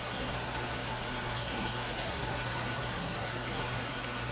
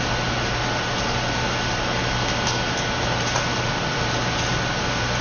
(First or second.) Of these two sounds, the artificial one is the first